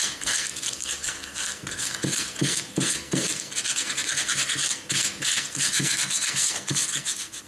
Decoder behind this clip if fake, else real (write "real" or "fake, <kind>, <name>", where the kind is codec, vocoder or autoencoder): fake, codec, SNAC